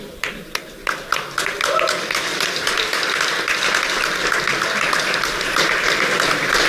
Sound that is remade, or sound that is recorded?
remade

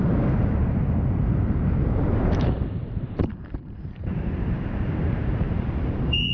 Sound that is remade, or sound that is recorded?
remade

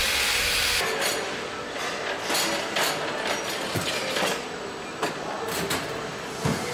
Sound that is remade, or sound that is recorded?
recorded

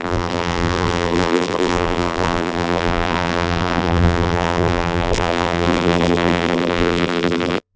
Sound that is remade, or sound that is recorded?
remade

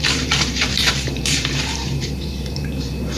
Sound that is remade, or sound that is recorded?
remade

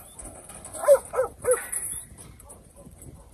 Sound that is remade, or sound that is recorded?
recorded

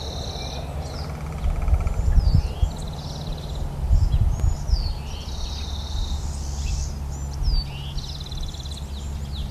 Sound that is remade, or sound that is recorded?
recorded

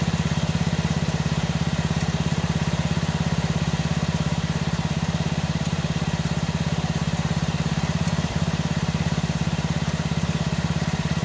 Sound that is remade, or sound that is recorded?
remade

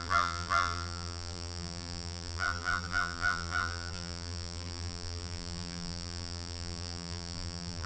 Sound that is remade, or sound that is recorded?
remade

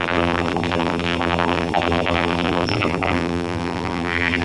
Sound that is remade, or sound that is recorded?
remade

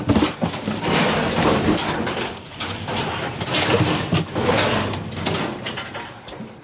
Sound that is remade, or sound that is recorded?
recorded